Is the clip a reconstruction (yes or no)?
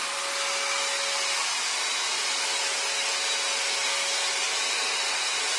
no